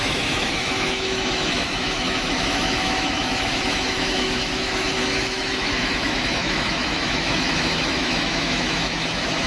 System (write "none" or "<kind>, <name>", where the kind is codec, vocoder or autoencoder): autoencoder, DAC-VAE